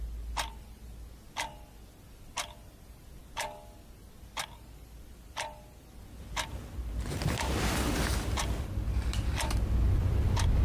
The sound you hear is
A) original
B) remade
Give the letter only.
A